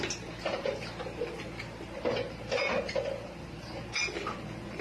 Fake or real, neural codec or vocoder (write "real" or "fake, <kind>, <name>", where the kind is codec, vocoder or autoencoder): real